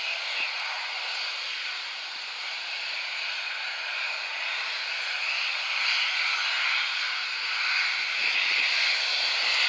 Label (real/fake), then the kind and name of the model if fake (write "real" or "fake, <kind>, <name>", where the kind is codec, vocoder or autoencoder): real